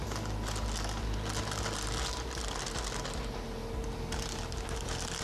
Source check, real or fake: real